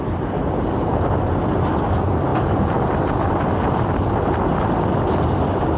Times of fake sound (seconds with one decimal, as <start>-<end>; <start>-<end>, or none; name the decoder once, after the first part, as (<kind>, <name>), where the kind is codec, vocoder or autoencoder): none